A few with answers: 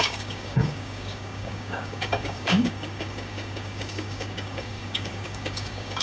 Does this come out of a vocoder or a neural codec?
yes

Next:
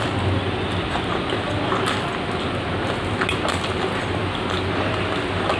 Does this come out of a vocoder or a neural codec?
no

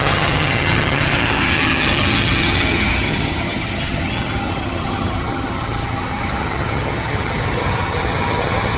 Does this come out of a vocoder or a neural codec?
yes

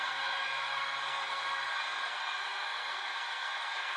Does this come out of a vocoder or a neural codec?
yes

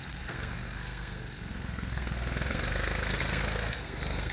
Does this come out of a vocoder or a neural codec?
yes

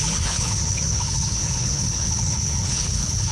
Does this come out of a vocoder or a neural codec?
yes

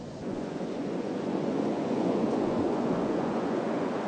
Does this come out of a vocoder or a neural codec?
yes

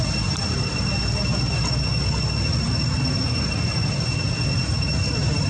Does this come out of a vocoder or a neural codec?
no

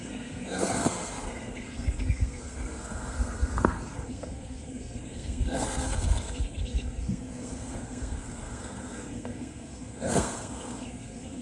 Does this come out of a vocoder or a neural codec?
yes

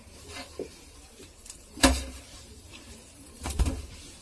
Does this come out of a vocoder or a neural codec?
yes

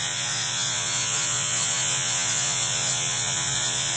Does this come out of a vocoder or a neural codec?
yes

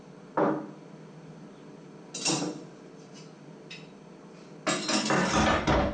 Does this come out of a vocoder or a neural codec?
no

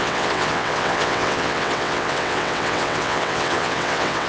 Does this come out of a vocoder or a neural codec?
yes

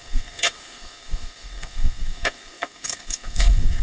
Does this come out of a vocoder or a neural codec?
yes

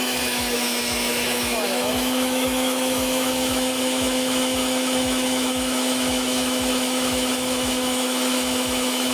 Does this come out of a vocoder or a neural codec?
yes